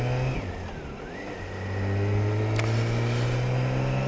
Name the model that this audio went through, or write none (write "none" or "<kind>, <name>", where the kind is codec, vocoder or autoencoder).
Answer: none